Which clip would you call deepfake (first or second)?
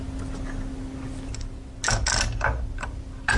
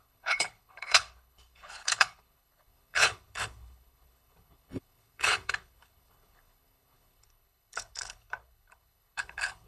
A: second